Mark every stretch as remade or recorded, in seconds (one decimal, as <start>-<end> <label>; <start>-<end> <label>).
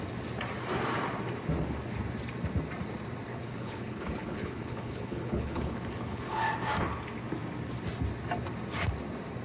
0.0-3.3 recorded; 3.3-6.4 remade; 6.4-9.4 recorded